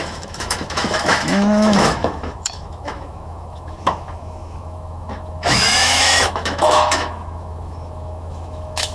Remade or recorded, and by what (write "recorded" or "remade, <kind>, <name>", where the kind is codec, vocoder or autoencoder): remade, autoencoder, DAC-VAE